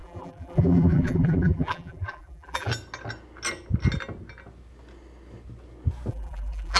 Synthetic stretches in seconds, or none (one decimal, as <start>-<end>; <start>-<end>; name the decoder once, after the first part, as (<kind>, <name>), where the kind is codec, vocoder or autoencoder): 0.0-2.7 (vocoder, BigVGAN v2); 6.1-6.8